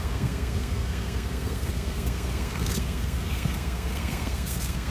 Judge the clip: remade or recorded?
remade